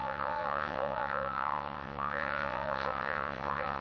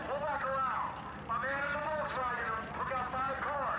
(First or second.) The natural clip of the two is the second